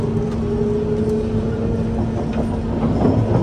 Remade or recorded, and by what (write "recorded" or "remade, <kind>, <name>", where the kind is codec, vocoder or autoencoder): recorded